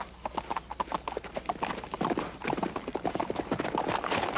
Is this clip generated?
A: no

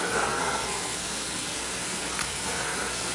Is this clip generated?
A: yes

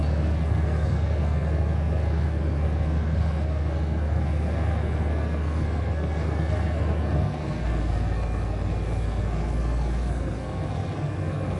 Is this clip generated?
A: yes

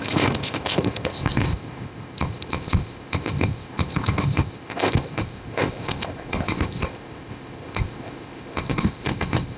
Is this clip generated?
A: yes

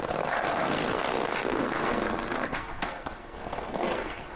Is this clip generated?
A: yes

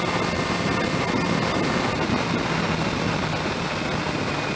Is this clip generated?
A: no